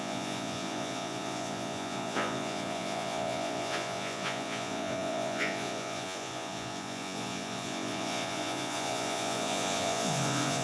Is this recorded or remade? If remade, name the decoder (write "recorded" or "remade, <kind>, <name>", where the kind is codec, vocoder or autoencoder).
remade, vocoder, Vocos